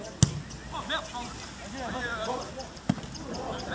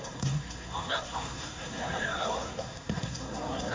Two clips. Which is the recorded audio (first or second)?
first